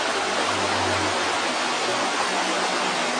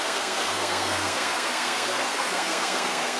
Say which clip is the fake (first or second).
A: second